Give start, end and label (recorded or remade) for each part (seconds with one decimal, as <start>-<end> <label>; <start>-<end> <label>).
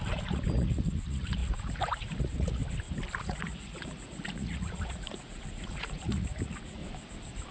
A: 0.0-2.6 remade; 2.6-3.2 recorded; 3.2-6.8 remade; 6.8-7.5 recorded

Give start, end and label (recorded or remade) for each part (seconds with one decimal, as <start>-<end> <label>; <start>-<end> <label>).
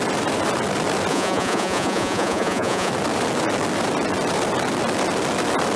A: 0.0-1.1 recorded; 1.1-2.9 remade; 2.9-5.8 recorded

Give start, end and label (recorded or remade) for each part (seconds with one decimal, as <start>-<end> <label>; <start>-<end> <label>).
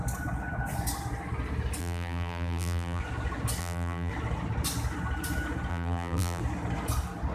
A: 0.0-1.8 recorded; 1.8-3.0 remade; 3.0-3.6 recorded; 3.6-4.1 remade; 4.1-5.7 recorded; 5.7-6.4 remade; 6.4-7.3 recorded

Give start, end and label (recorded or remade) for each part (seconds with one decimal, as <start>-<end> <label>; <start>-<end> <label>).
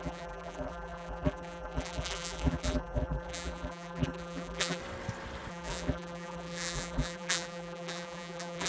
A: 0.0-4.8 remade; 4.8-5.5 recorded; 5.5-8.7 remade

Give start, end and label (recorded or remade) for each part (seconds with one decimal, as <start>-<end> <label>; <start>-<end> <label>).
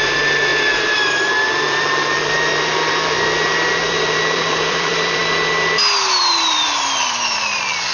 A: 0.0-5.2 remade; 5.2-6.2 recorded; 6.2-7.9 remade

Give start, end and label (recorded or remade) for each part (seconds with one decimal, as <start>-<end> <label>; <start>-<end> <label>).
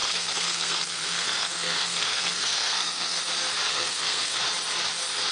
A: 0.0-3.2 remade; 3.2-3.7 recorded; 3.7-4.4 remade; 4.4-5.3 recorded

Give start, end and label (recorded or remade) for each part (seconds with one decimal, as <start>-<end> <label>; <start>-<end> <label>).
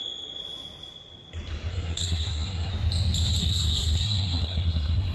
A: 0.0-1.7 recorded; 1.7-2.7 remade; 2.7-3.4 recorded; 3.4-5.1 remade